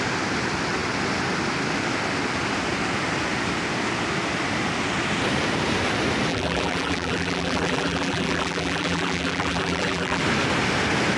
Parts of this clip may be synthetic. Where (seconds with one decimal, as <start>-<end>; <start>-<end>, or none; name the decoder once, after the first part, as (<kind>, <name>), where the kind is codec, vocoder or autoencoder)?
6.3-10.2 (vocoder, BigVGAN v2)